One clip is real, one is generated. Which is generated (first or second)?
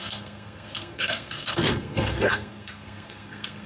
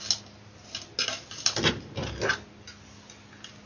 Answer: first